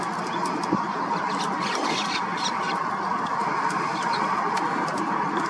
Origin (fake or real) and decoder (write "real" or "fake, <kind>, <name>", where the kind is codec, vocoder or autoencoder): real